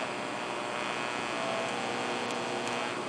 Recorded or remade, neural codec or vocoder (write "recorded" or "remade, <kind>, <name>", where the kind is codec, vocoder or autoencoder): recorded